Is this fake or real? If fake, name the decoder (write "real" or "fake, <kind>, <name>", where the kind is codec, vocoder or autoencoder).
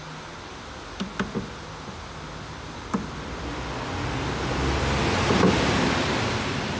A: real